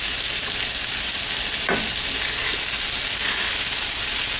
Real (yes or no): yes